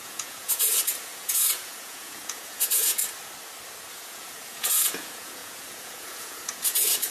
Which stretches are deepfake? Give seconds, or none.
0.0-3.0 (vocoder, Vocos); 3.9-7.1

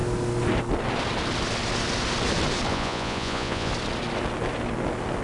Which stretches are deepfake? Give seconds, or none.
2.7-3.7 (vocoder, Vocos)

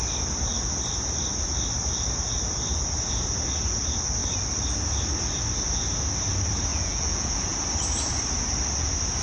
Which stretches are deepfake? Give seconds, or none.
6.7-7.5 (vocoder, Vocos)

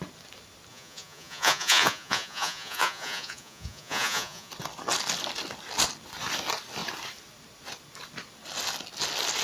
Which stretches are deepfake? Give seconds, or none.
0.7-4.5 (vocoder, Vocos)